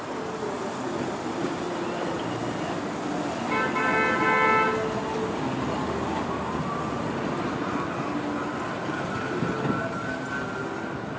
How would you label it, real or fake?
real